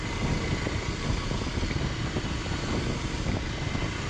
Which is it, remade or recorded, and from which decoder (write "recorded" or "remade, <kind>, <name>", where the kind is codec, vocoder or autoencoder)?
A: recorded